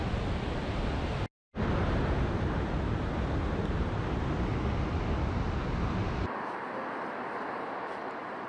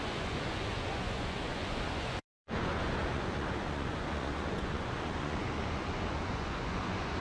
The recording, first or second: first